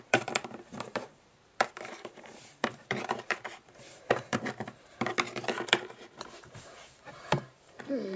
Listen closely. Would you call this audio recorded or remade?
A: remade